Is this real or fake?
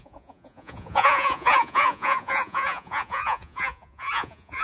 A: fake